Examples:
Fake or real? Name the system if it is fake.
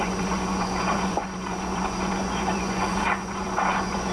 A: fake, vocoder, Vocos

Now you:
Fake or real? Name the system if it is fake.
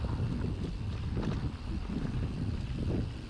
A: real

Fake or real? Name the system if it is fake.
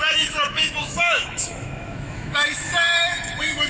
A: fake, autoencoder, DAC-VAE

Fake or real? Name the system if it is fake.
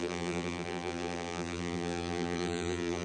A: fake, vocoder, BigVGAN v2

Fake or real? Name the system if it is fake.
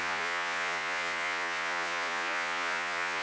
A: fake, vocoder, Vocos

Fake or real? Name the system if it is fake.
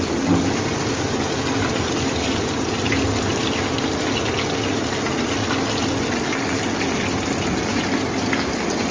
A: real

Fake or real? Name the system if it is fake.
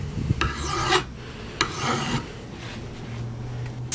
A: real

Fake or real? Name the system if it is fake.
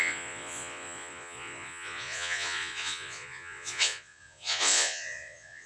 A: fake, vocoder, Vocos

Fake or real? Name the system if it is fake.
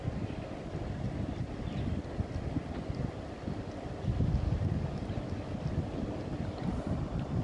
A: real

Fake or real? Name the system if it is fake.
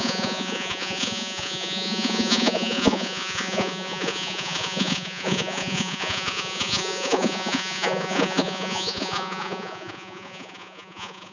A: fake, vocoder, Vocos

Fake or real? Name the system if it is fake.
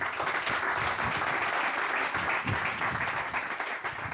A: real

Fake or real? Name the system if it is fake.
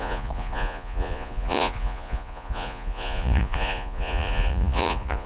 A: fake, vocoder, Vocos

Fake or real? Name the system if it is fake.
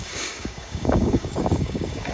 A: fake, codec, DAC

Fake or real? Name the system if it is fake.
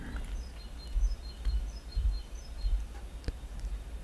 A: fake, vocoder, BigVGAN v2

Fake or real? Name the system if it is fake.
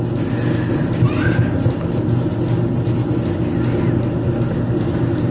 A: real